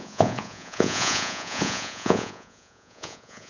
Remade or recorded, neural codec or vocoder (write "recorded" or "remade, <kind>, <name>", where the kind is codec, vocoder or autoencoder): remade, vocoder, Vocos